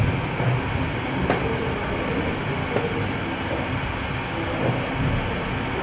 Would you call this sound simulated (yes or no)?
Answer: no